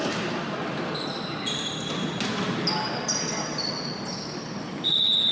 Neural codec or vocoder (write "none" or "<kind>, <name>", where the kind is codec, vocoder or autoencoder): none